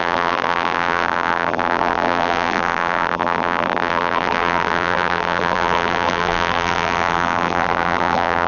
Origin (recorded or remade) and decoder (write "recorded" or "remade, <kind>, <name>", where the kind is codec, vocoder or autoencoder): remade, vocoder, BigVGAN v2